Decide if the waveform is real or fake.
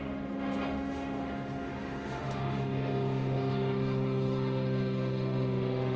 fake